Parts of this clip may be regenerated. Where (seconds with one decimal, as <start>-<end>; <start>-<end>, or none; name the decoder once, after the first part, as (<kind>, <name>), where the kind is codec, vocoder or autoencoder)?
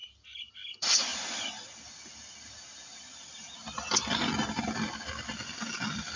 none